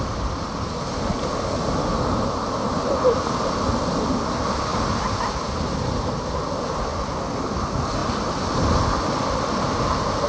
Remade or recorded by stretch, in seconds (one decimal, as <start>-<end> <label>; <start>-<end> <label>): 0.0-10.3 recorded